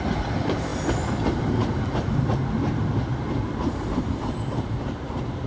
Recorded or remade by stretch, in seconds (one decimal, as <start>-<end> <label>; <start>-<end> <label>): 0.0-2.4 remade; 2.4-4.5 recorded; 4.5-5.5 remade